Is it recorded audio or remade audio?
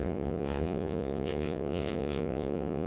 remade